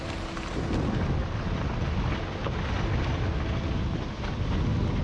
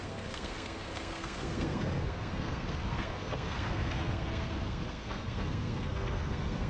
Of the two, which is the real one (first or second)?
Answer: first